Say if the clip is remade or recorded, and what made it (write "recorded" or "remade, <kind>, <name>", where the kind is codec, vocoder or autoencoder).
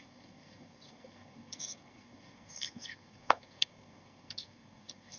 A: remade, codec, SNAC